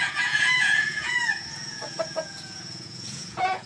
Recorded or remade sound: remade